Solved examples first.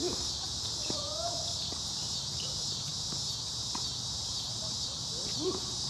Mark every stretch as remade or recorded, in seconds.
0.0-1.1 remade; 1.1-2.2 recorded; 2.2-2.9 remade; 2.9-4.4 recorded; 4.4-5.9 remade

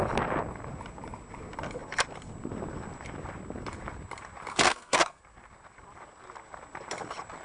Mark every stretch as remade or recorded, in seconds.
0.0-4.5 recorded; 4.5-5.2 remade; 5.2-7.4 recorded

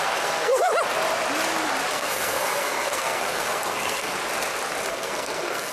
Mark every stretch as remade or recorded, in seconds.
0.0-0.7 remade; 0.7-1.9 recorded; 1.9-4.2 remade; 4.2-4.9 recorded; 4.9-5.7 remade

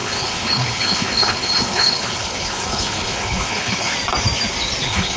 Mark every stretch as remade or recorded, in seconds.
0.0-3.9 remade; 3.9-4.8 recorded; 4.8-5.2 remade

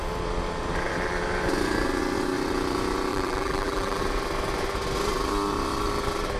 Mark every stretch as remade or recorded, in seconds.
0.0-3.1 recorded; 3.1-4.0 remade; 4.0-6.4 recorded

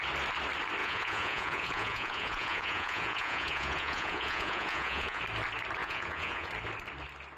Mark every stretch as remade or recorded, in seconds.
0.0-0.8 recorded; 0.8-5.2 remade; 5.2-5.8 recorded; 5.8-6.5 remade; 6.5-7.4 recorded

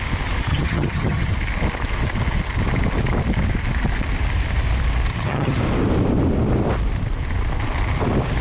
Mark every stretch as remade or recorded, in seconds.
0.0-0.5 recorded; 0.5-1.3 remade; 1.3-5.1 recorded; 5.1-5.6 remade; 5.6-8.4 recorded

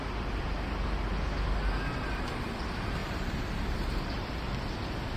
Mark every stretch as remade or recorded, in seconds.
0.0-3.0 recorded; 3.0-3.5 remade; 3.5-5.2 recorded